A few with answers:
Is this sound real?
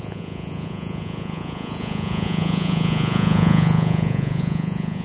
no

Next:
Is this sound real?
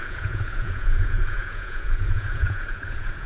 no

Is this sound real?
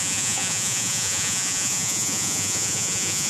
no